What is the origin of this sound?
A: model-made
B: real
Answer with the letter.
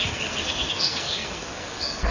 A